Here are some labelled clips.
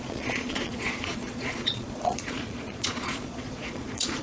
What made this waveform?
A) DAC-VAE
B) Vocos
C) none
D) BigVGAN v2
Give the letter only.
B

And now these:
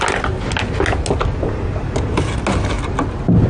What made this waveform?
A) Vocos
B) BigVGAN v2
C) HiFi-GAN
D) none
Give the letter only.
D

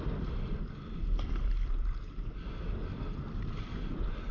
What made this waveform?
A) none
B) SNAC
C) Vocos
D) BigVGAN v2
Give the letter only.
A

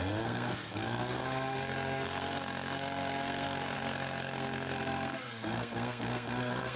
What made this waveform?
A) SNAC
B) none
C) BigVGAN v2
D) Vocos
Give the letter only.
A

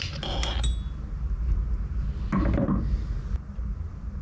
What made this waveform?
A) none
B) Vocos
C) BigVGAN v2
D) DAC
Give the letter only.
A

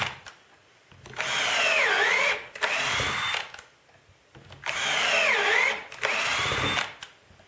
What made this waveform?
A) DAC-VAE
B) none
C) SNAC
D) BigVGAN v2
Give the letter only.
B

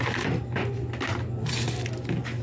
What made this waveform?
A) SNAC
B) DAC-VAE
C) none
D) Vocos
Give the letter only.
C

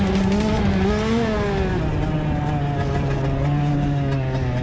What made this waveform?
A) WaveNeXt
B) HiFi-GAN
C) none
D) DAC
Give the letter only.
C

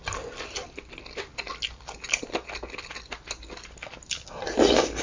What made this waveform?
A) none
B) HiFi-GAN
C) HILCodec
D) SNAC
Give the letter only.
A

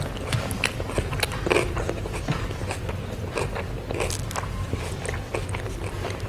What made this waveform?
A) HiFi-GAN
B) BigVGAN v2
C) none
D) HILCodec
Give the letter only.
C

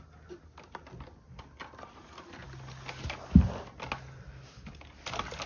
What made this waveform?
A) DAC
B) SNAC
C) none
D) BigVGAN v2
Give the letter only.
C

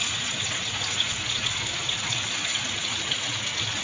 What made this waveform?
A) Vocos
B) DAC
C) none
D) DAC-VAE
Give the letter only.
A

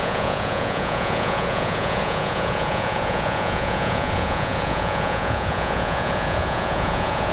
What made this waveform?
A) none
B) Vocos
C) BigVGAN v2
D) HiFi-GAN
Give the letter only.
B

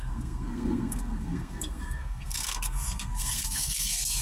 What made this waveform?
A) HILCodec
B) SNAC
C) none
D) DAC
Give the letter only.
B